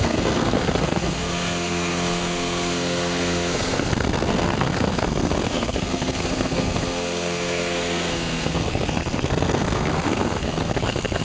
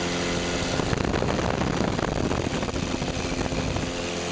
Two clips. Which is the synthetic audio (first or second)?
first